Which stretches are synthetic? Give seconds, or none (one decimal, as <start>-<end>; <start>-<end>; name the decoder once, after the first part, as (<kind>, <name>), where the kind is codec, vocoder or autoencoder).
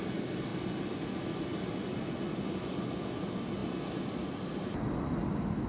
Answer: 0.5-1.7 (vocoder, BigVGAN v2)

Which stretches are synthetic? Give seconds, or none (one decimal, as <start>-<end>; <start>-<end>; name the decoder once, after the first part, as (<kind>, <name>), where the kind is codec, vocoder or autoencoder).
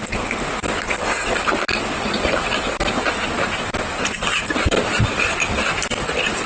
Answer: 0.6-3.1 (vocoder, BigVGAN v2)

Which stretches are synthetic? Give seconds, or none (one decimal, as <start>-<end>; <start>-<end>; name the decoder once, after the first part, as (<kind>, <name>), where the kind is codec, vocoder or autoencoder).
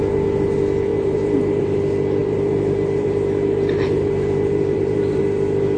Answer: 0.9-1.6 (vocoder, BigVGAN v2); 2.2-5.2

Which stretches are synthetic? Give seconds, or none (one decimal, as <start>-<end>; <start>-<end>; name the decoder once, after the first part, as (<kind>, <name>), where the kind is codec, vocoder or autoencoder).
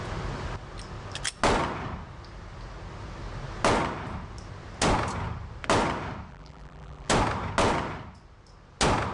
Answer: 6.3-7.1 (vocoder, BigVGAN v2)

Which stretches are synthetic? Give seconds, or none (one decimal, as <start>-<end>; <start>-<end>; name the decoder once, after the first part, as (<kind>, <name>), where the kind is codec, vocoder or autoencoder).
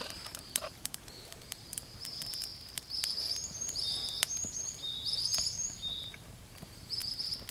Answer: 0.0-7.0 (vocoder, BigVGAN v2)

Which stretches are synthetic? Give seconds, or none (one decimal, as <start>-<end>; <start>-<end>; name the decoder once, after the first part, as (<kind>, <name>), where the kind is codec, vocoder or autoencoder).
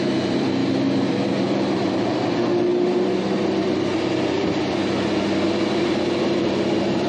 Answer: 0.0-0.6 (vocoder, BigVGAN v2); 1.1-7.1